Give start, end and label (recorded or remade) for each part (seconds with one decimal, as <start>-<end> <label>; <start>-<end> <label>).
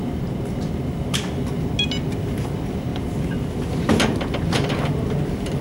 0.0-1.5 remade; 1.5-2.9 recorded; 2.9-4.7 remade; 4.7-5.6 recorded